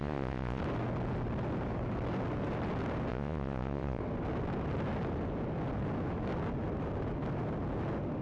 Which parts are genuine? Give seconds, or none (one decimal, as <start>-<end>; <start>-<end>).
0.6-3.1; 4.0-8.2